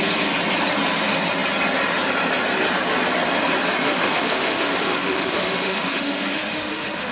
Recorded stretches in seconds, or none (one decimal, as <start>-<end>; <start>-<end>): 0.0-3.8